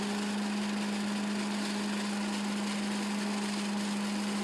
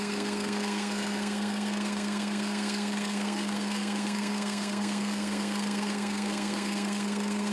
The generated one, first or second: second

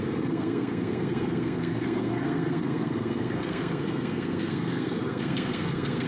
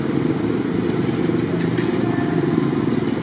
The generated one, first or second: first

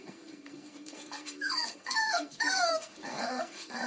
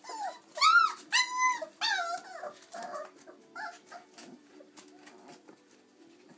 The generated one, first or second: first